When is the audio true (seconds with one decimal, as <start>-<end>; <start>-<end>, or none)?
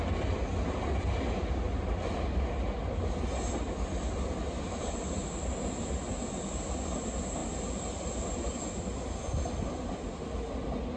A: 0.0-11.0